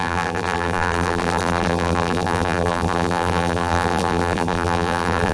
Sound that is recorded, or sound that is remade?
remade